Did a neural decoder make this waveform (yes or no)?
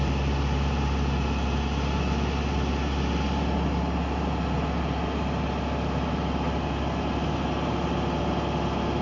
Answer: no